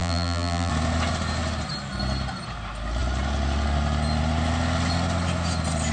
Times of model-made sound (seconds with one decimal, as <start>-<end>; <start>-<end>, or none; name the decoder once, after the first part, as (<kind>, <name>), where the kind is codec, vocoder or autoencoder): 0.0-0.7 (vocoder, BigVGAN v2)